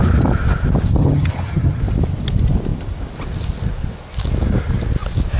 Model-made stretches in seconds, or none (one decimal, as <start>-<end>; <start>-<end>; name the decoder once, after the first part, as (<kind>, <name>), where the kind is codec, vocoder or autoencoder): 1.0-1.8 (vocoder, HiFi-GAN)